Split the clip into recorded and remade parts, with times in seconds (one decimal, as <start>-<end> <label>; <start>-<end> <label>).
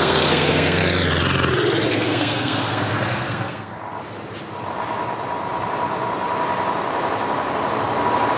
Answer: 0.0-0.8 remade; 0.8-1.9 recorded; 1.9-3.7 remade; 3.7-8.4 recorded